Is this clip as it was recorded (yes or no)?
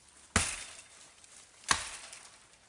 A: yes